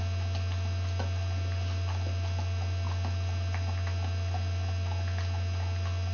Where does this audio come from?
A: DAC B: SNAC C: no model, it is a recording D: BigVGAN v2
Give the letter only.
C